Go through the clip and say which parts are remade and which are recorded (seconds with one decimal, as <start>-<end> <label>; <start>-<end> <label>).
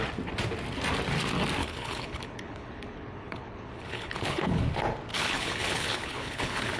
0.0-1.6 recorded; 1.6-4.6 remade; 4.6-5.1 recorded; 5.1-6.8 remade